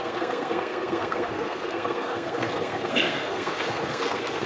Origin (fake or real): fake